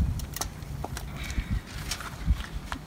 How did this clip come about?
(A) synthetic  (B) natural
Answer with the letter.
A